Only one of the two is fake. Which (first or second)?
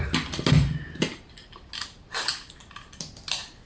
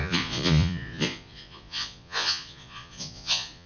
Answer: second